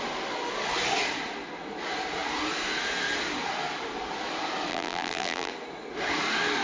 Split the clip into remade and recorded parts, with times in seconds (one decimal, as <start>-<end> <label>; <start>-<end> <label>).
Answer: 0.0-4.7 recorded; 4.7-5.5 remade; 5.5-6.6 recorded